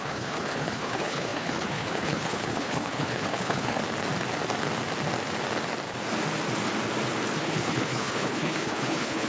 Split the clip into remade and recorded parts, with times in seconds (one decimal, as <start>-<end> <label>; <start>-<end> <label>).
0.0-3.8 remade; 3.8-7.4 recorded; 7.4-9.3 remade